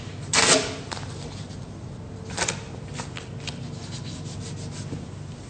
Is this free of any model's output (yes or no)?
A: yes